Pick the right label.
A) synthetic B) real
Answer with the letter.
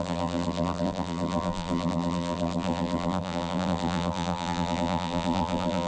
A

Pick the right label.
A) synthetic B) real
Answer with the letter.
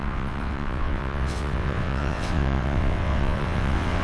A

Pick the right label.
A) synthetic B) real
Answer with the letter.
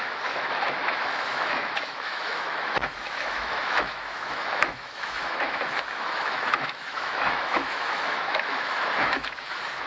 A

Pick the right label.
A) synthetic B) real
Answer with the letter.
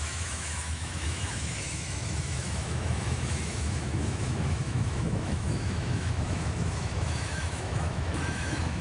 A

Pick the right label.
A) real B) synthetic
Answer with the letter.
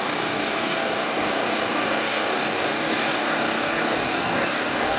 B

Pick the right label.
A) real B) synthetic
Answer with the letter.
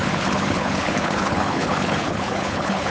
B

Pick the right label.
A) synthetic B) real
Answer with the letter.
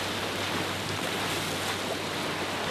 B